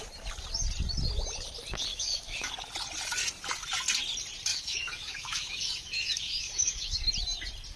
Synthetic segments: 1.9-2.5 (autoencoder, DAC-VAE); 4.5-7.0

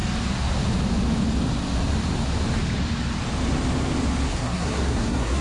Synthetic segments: 4.3-5.4 (codec, SNAC)

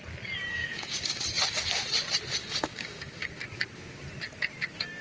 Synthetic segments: 0.5-1.2 (codec, DAC); 2.4-3.3

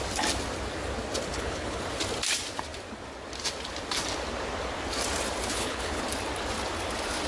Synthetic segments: 1.3-1.8 (codec, HILCodec); 5.5-6.0